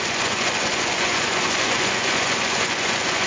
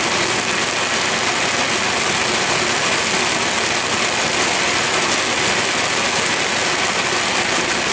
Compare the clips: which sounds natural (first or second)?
second